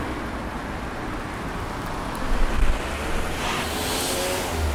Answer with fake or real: real